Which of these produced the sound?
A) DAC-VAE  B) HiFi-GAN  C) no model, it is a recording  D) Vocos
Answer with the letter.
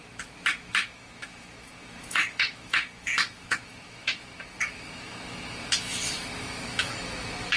A